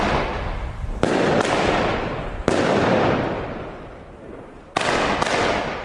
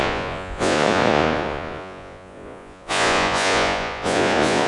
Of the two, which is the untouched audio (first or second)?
first